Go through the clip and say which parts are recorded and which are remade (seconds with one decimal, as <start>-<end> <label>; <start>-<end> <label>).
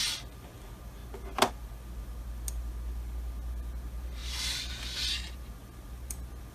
0.0-6.5 recorded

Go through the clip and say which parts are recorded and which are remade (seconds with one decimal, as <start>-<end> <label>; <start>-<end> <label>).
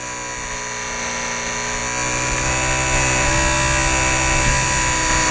0.0-5.3 recorded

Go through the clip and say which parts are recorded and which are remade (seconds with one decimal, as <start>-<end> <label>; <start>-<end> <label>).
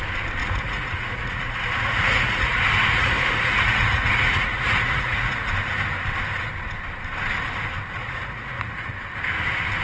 0.0-0.4 recorded; 0.4-5.5 remade; 5.5-8.0 recorded; 8.0-8.9 remade; 8.9-9.8 recorded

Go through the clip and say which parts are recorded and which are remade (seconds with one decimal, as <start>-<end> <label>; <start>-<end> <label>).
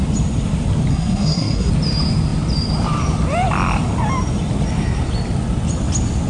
0.0-0.9 recorded; 0.9-1.7 remade; 1.7-6.3 recorded